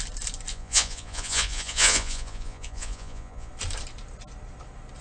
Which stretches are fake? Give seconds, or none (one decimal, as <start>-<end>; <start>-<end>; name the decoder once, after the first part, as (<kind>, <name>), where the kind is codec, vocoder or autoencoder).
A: 0.5-3.5 (vocoder, Vocos)